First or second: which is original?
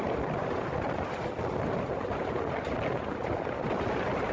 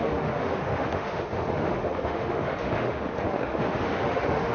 first